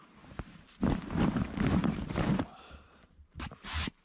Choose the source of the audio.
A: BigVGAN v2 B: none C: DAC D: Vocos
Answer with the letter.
A